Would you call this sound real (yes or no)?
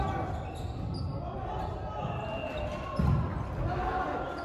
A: yes